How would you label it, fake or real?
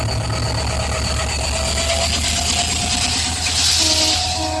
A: real